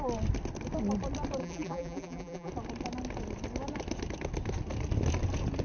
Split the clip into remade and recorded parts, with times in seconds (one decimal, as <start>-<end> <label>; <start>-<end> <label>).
0.0-1.4 recorded; 1.4-2.5 remade; 2.5-5.6 recorded